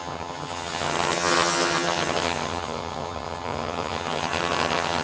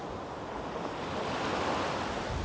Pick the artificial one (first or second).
first